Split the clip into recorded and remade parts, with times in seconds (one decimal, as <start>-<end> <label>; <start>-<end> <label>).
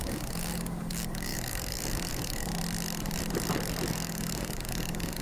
0.0-2.5 remade; 2.5-3.9 recorded; 3.9-5.2 remade